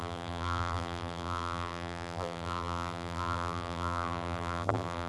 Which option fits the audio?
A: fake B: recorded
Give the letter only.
A